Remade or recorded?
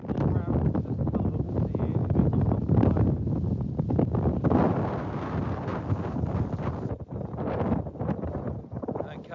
recorded